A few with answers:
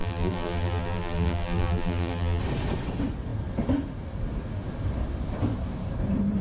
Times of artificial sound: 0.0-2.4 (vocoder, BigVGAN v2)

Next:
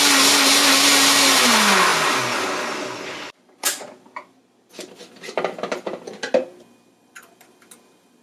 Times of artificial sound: none

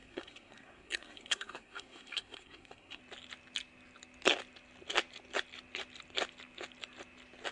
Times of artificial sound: 0.0-3.0 (codec, SNAC)